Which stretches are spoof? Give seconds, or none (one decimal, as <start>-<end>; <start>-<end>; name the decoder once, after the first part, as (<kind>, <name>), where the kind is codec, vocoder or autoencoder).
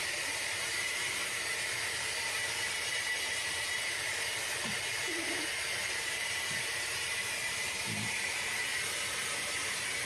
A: 0.0-8.7 (vocoder, BigVGAN v2); 9.3-10.0